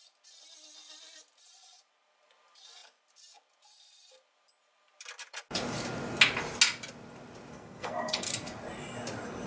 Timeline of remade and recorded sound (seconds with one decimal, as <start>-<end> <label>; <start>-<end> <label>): 0.0-7.5 recorded; 7.5-8.3 remade; 8.3-9.5 recorded